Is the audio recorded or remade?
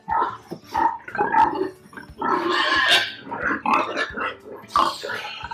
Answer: recorded